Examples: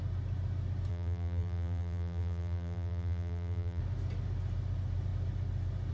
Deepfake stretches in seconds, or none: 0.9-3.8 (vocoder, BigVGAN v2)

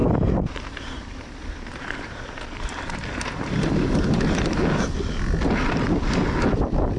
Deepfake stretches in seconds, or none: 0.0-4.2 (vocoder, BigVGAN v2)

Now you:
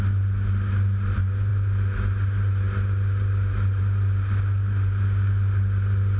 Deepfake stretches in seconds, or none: none